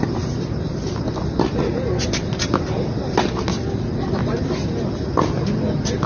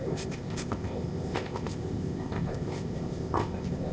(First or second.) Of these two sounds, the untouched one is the first